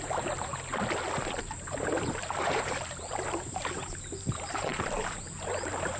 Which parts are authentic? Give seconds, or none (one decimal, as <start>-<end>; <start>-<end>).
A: 0.5-1.4